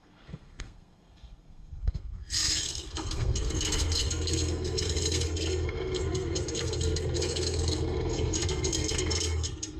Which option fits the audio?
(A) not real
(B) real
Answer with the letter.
A